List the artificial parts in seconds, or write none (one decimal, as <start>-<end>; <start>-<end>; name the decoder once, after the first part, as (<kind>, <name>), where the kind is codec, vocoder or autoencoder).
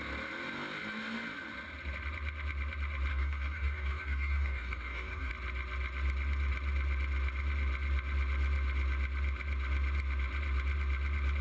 3.1-5.3 (codec, DAC)